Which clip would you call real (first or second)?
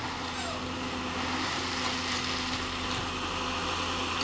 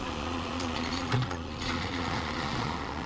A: first